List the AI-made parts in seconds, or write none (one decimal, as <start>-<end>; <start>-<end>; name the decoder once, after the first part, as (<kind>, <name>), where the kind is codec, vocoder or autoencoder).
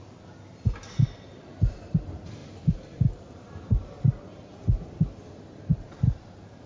1.4-6.7 (vocoder, BigVGAN v2)